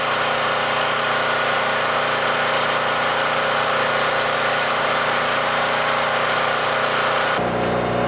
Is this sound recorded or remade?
recorded